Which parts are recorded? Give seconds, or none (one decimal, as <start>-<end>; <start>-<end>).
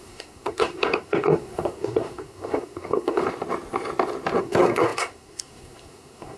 3.2-4.4